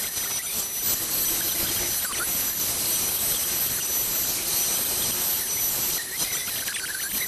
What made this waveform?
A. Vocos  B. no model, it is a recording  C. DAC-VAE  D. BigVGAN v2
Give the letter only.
B